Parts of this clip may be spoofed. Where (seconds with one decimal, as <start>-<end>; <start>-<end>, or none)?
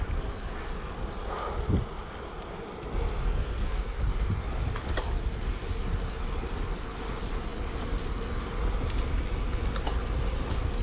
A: 3.3-4.0